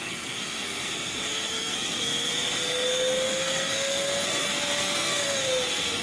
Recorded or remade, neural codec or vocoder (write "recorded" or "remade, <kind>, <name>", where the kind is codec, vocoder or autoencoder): remade, codec, SNAC